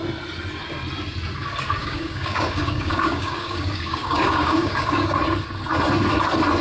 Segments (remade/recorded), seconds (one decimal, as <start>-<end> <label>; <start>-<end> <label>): 0.0-1.8 recorded; 1.8-5.2 remade; 5.2-6.6 recorded